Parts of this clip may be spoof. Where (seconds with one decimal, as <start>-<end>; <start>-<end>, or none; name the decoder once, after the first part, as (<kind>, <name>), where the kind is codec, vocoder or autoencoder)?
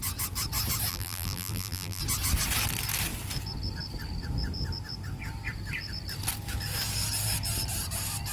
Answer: 0.9-2.0 (vocoder, BigVGAN v2)